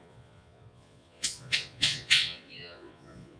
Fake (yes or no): yes